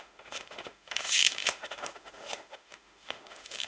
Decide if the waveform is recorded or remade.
remade